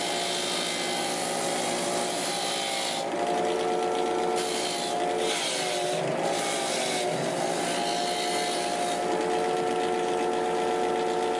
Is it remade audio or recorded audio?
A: recorded